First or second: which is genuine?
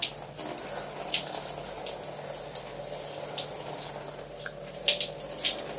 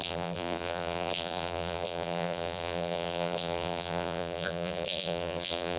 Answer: first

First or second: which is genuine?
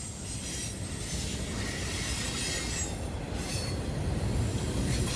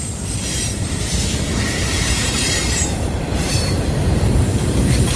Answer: first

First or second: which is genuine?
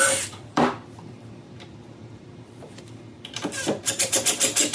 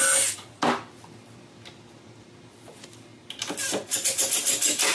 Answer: second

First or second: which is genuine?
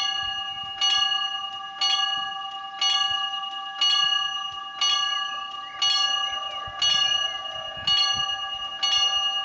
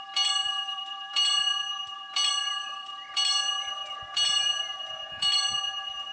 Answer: first